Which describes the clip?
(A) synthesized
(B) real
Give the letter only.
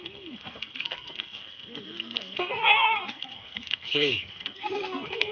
A